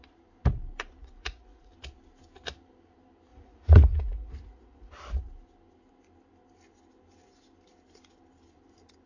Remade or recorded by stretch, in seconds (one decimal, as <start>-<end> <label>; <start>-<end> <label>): 0.0-1.0 recorded; 1.0-1.7 remade; 1.7-3.3 recorded; 3.3-4.9 remade; 4.9-9.1 recorded